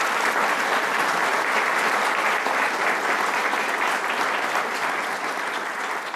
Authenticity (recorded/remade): recorded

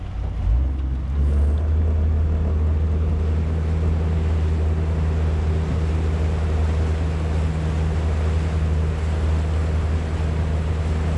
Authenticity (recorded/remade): recorded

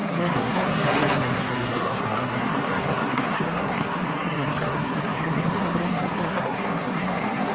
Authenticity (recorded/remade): remade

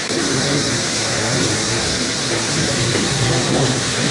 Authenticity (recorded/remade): remade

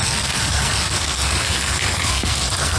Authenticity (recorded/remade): remade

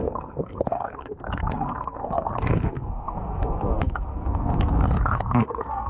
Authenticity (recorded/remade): remade